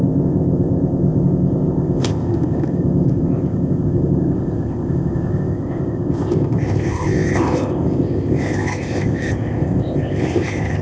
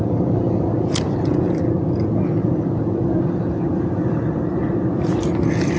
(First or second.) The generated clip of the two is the first